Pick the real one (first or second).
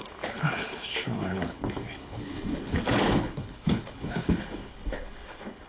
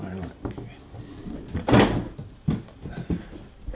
second